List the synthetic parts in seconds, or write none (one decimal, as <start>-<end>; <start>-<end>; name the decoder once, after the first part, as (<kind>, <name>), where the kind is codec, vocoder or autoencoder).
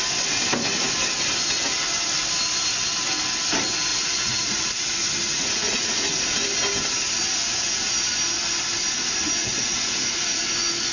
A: 3.9-6.2 (vocoder, Vocos); 9.4-10.4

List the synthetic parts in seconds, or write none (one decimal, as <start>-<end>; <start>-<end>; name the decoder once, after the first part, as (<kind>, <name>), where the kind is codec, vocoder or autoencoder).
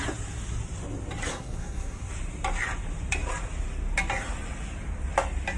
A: 1.3-2.1 (codec, SNAC)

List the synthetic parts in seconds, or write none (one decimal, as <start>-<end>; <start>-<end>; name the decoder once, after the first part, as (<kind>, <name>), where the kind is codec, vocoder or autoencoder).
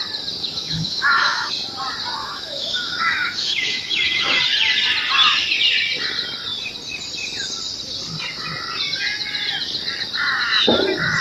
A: 0.4-1.5 (autoencoder, DAC-VAE); 2.2-4.4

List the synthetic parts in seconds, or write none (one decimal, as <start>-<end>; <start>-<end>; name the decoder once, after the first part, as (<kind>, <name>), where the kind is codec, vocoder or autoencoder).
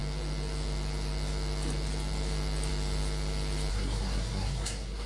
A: 3.7-5.1 (codec, SNAC)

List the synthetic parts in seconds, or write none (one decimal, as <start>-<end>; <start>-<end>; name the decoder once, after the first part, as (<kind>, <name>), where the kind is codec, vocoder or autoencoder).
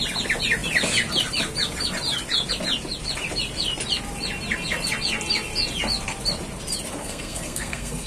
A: 7.0-8.1 (codec, SNAC)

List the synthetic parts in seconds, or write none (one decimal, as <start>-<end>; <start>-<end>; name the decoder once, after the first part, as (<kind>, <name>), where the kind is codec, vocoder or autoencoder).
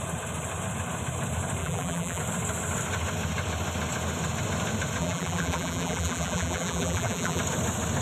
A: 1.6-2.2 (vocoder, BigVGAN v2); 5.0-7.4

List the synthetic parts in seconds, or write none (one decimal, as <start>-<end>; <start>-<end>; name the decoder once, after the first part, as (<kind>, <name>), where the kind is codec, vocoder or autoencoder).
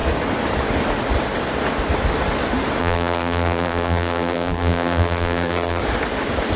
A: 2.8-5.8 (vocoder, BigVGAN v2)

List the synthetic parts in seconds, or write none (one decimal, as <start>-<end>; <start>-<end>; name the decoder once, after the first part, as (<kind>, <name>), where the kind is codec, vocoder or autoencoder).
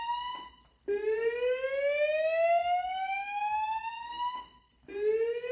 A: none